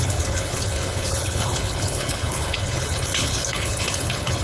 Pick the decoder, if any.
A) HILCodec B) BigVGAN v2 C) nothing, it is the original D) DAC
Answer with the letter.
A